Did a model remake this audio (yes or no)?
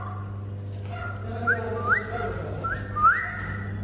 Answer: no